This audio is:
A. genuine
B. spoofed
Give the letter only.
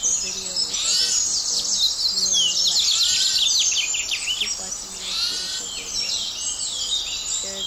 A